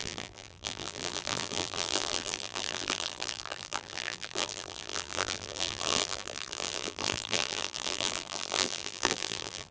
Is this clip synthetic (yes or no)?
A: yes